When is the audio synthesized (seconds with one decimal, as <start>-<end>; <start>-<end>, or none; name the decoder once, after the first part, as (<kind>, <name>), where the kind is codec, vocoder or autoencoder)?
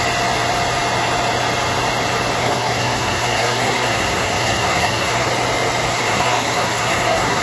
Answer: 2.4-5.3 (codec, SNAC); 5.9-7.4